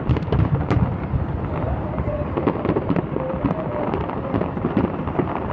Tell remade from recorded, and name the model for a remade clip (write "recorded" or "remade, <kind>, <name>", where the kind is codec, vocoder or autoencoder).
remade, vocoder, BigVGAN v2